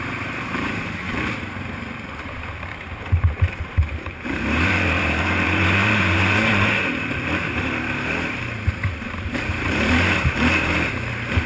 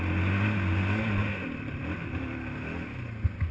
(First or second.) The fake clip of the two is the first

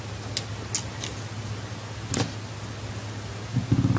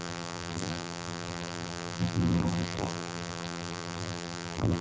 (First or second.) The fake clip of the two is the second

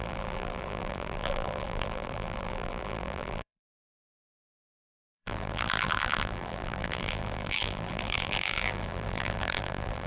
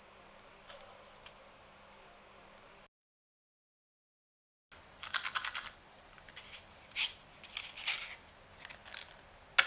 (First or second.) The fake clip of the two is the first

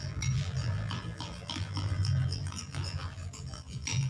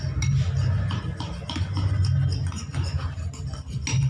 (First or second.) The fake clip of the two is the first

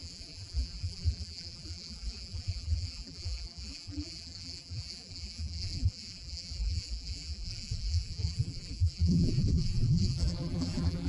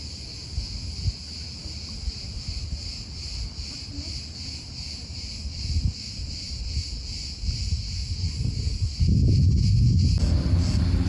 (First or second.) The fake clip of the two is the first